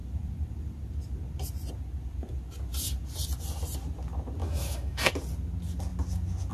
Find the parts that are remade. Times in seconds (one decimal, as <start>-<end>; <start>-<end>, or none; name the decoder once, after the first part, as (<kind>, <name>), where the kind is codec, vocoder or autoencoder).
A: 4.4-5.1 (autoencoder, DAC-VAE)